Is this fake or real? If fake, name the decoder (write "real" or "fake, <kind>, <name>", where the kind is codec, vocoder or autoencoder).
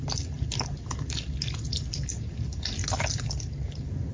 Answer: real